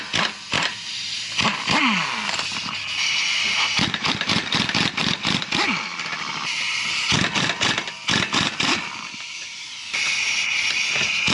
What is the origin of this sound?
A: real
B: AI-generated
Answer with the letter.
A